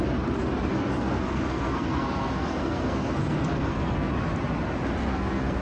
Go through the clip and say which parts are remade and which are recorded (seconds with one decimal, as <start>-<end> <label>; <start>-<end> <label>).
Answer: 0.0-0.7 recorded; 0.7-4.1 remade; 4.1-5.0 recorded; 5.0-5.6 remade